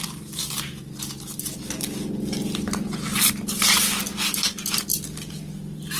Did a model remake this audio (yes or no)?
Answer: no